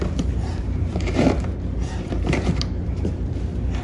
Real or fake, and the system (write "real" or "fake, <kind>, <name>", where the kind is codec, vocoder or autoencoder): fake, vocoder, BigVGAN v2